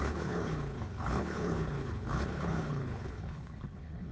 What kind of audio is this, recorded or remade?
remade